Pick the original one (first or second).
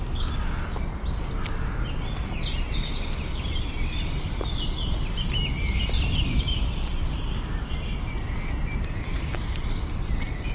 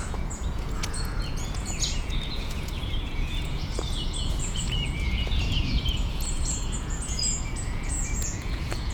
first